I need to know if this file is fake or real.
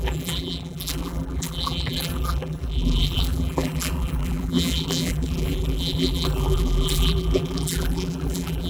fake